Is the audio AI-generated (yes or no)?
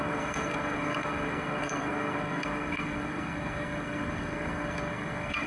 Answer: yes